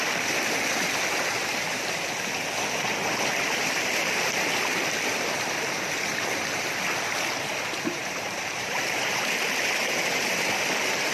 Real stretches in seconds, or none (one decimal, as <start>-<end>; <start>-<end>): 0.0-8.0; 10.2-11.1